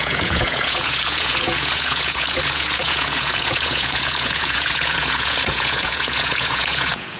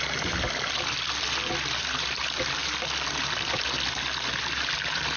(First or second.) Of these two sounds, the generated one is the first